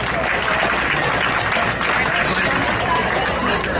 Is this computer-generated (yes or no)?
no